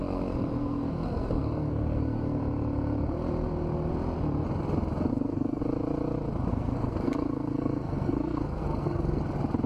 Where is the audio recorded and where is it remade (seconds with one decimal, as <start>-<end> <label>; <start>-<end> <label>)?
0.0-2.4 remade; 2.4-5.1 recorded; 5.1-5.6 remade; 5.6-6.5 recorded; 6.5-9.2 remade; 9.2-9.7 recorded